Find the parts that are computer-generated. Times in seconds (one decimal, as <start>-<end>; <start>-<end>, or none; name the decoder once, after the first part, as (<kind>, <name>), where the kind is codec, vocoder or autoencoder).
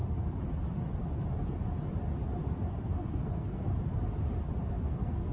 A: 2.7-3.7 (codec, SNAC); 4.8-5.3